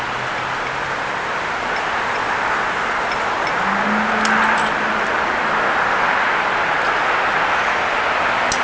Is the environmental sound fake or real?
real